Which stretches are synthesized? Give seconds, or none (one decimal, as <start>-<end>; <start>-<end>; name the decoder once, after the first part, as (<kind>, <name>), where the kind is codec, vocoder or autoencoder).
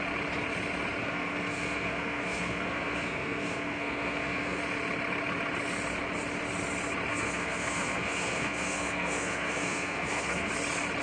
1.0-4.6 (codec, SNAC); 7.1-10.5